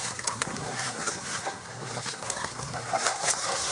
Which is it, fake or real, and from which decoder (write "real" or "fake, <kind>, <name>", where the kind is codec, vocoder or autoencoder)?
fake, codec, SNAC